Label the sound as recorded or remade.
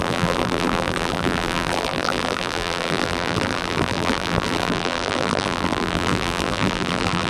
remade